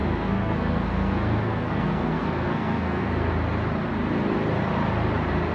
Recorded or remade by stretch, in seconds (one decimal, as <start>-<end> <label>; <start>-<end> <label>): 0.0-3.3 remade; 3.3-5.5 recorded